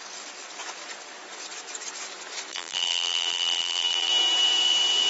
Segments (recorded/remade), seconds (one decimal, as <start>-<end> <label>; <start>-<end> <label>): 0.0-2.5 recorded; 2.5-4.1 remade; 4.1-5.1 recorded